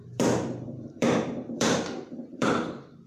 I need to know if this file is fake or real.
fake